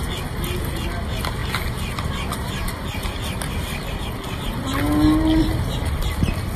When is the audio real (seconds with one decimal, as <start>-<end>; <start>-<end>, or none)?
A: 0.0-6.6